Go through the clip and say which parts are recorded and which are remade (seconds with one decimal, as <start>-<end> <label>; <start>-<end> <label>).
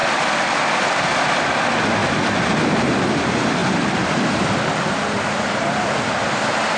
0.0-3.6 recorded; 3.6-4.4 remade; 4.4-6.8 recorded